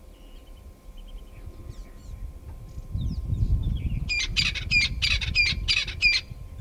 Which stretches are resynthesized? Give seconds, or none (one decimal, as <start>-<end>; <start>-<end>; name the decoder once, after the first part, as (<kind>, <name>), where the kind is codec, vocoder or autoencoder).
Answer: none